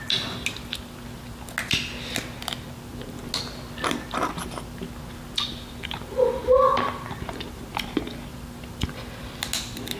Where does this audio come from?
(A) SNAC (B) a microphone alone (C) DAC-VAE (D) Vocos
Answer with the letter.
B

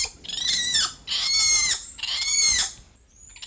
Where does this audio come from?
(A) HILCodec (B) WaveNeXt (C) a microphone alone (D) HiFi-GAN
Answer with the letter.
C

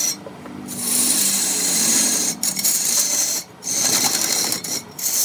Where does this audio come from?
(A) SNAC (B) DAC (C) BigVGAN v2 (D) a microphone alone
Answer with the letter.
C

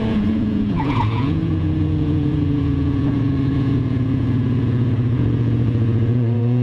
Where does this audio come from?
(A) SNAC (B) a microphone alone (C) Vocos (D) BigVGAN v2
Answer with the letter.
C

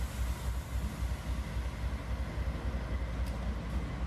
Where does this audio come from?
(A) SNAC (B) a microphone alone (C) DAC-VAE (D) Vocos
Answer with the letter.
B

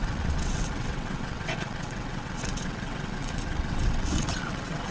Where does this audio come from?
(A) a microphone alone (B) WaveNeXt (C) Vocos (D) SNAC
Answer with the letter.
B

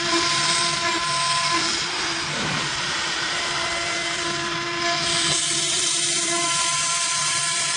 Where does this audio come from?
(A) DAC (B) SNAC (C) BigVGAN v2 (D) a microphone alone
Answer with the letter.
C